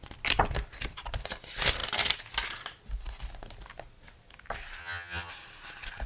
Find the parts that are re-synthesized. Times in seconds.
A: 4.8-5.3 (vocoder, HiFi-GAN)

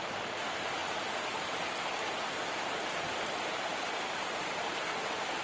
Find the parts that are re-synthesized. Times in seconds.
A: none